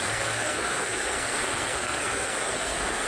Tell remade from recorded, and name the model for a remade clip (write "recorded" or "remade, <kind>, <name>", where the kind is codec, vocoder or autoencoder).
remade, codec, SNAC